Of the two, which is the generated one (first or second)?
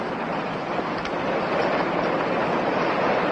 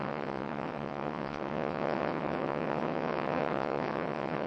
second